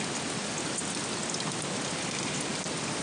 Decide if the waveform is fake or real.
real